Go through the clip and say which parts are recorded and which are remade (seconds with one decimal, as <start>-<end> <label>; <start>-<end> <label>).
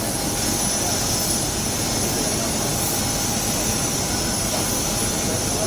0.0-5.7 recorded